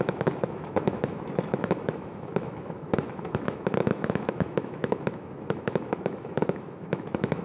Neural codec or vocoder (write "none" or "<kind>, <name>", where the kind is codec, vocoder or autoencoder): autoencoder, DAC-VAE